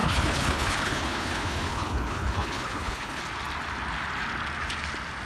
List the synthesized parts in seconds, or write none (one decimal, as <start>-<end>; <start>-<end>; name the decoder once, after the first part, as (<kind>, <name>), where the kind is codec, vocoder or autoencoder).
0.0-3.2 (codec, HILCodec)